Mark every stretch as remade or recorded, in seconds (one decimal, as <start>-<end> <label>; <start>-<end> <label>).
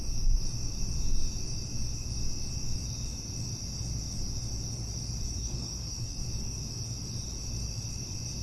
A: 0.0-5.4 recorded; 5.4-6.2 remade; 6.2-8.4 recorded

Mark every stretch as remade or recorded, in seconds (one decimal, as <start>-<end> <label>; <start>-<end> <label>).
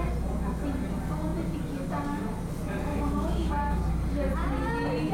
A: 0.0-2.9 recorded; 2.9-3.5 remade; 3.5-5.1 recorded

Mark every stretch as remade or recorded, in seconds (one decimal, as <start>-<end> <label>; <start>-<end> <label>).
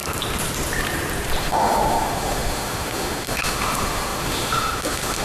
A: 0.0-1.4 recorded; 1.4-5.2 remade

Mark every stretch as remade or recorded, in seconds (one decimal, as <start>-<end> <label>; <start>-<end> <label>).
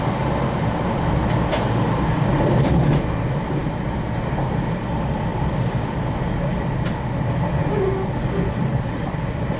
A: 0.0-5.3 recorded; 5.3-6.1 remade; 6.1-9.6 recorded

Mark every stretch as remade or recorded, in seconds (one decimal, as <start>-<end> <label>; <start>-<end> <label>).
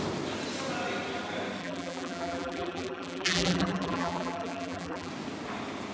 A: 0.0-1.6 recorded; 1.6-5.1 remade; 5.1-5.9 recorded